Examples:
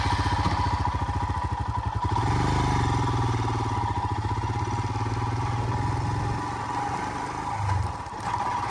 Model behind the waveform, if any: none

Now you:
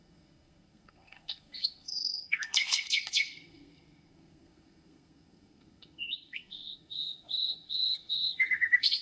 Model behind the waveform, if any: codec, SNAC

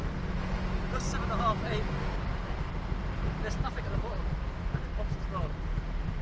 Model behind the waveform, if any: none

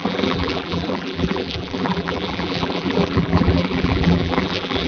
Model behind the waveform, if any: vocoder, BigVGAN v2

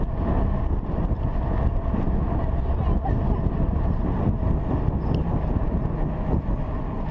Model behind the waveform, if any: none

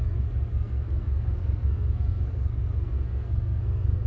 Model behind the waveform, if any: codec, SNAC